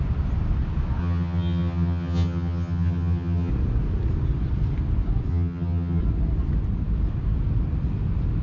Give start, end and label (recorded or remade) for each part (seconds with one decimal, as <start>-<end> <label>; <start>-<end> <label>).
0.0-1.0 recorded; 1.0-3.5 remade; 3.5-5.3 recorded; 5.3-6.0 remade; 6.0-8.4 recorded